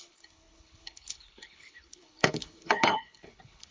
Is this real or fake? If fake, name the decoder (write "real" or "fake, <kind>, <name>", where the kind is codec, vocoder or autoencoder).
fake, codec, HILCodec